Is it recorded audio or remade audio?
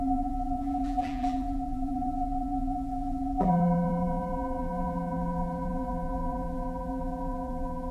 remade